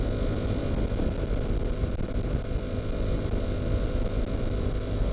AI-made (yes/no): no